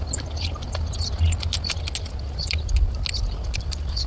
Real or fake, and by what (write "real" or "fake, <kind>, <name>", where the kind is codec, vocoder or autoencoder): real